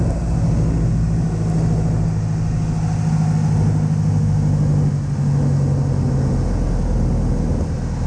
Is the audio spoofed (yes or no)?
no